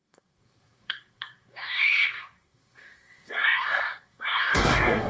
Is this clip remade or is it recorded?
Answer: remade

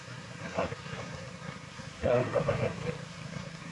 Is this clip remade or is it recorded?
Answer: remade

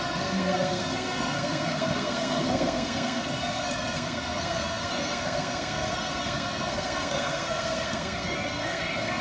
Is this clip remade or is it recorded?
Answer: remade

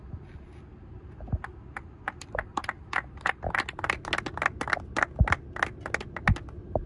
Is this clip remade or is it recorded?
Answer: recorded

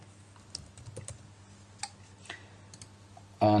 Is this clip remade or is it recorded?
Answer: recorded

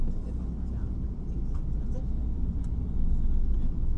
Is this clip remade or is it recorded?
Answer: recorded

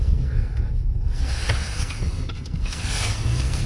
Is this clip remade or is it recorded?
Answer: remade